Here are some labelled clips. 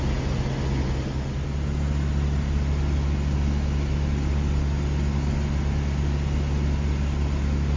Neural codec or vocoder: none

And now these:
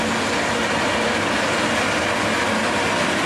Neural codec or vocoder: none